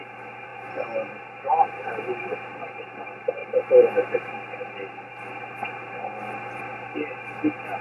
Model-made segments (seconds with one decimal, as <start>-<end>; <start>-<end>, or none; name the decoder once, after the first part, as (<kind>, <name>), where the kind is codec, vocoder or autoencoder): none